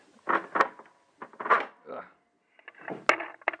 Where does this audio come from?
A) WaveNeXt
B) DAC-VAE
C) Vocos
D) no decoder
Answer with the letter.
D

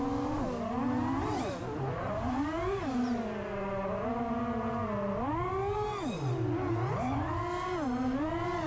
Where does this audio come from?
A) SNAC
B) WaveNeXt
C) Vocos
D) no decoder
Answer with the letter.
D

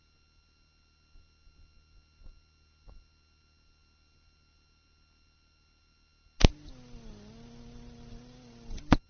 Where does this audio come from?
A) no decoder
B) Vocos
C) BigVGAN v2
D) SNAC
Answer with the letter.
A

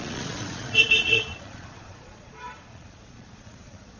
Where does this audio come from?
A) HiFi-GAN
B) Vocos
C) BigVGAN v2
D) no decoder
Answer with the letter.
B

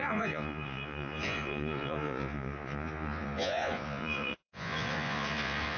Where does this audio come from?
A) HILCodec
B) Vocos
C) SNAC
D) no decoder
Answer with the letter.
B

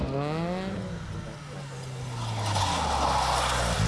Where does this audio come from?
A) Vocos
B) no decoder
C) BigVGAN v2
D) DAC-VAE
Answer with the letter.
B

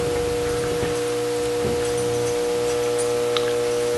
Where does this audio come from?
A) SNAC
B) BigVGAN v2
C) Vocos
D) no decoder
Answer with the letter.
D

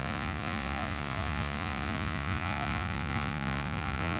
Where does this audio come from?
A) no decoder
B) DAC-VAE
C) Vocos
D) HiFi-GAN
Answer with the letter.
C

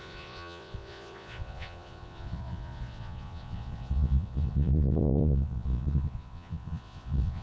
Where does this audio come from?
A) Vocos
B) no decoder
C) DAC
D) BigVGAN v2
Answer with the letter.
A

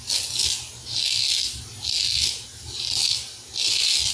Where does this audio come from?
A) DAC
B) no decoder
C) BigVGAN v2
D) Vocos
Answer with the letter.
B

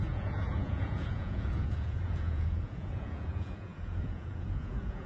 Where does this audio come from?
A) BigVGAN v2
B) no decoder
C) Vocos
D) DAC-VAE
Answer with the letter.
C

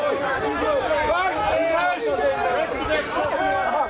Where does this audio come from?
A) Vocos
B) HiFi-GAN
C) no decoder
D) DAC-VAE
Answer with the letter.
C